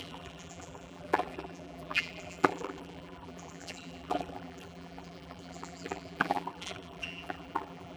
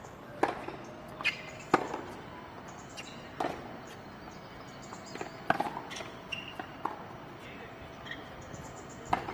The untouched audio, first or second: second